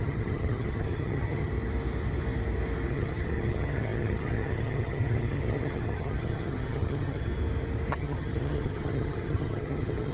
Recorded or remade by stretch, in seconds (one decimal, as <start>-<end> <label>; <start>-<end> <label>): 0.0-1.5 remade; 1.5-2.9 recorded; 2.9-7.3 remade; 7.3-7.9 recorded; 7.9-10.1 remade